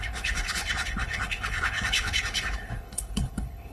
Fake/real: fake